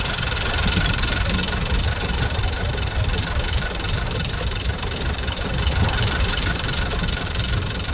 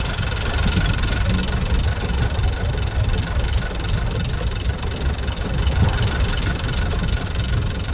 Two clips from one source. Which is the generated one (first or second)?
first